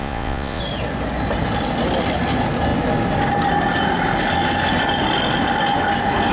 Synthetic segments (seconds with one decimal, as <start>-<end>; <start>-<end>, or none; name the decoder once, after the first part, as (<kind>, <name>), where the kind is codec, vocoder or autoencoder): 0.0-0.6 (vocoder, Vocos)